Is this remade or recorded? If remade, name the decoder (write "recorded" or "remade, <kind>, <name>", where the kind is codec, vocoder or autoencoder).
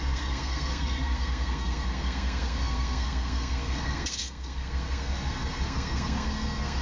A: remade, codec, SNAC